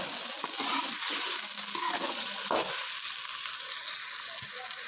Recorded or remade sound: recorded